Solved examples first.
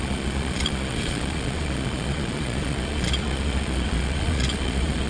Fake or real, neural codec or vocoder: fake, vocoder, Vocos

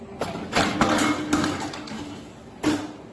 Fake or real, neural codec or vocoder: real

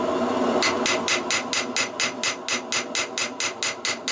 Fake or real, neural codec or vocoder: real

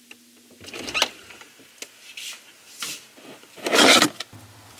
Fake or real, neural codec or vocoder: real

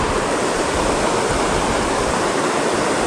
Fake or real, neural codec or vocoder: real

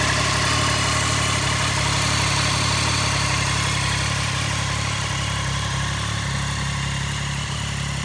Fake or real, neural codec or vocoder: real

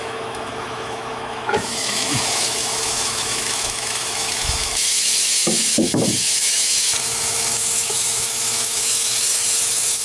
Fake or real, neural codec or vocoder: fake, autoencoder, DAC-VAE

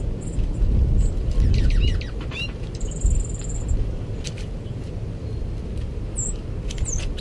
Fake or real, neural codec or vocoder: real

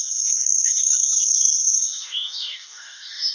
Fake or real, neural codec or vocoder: fake, codec, DAC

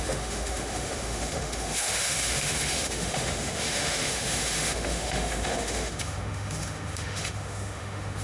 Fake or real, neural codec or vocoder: fake, autoencoder, DAC-VAE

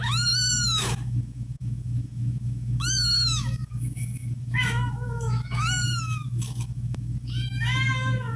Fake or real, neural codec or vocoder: fake, autoencoder, DAC-VAE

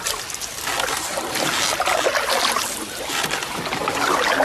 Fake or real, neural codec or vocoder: real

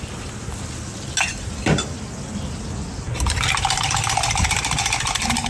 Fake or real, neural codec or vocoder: real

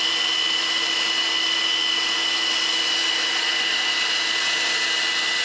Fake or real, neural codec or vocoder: real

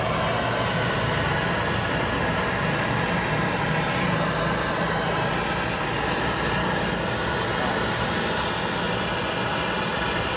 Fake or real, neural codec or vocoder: real